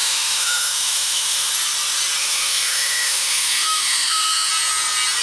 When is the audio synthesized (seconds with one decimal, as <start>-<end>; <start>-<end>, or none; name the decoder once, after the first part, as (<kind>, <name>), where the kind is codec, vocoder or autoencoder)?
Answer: 0.0-1.5 (autoencoder, DAC-VAE); 2.2-4.5